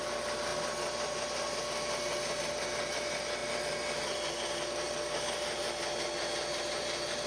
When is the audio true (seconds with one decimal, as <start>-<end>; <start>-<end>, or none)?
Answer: 0.0-7.3